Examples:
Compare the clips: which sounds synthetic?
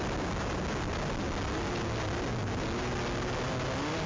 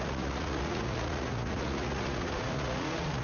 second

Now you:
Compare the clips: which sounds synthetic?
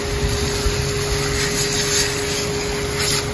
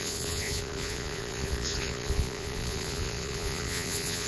second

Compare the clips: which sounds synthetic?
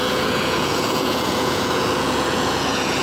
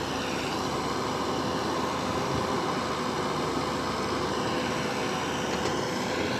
first